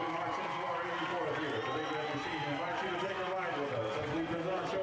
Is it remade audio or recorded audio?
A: recorded